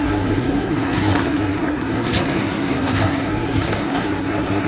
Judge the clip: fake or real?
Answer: fake